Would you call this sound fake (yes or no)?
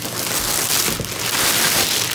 no